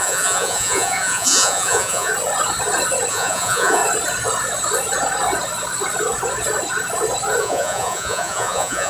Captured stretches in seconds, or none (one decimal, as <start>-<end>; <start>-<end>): 2.1-3.1; 3.8-7.4